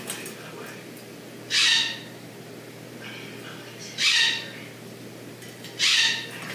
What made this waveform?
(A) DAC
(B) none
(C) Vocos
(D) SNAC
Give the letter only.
B